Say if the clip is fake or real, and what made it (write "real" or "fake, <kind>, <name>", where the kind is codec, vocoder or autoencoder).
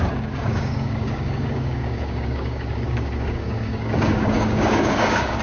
fake, codec, DAC